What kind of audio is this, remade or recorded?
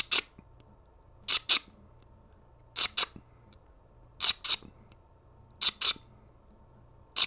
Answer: recorded